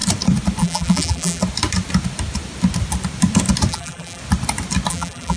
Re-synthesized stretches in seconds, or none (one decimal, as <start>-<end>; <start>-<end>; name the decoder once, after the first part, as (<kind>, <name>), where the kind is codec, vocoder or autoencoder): 0.6-1.4 (vocoder, BigVGAN v2); 3.7-4.2; 4.9-5.4